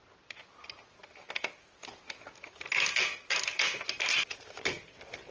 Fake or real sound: real